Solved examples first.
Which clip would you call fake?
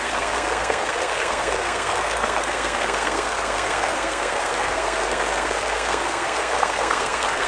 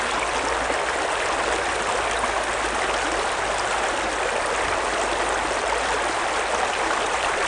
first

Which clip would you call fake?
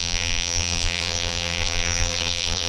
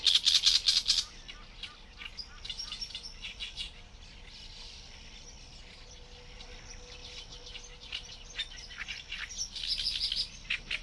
first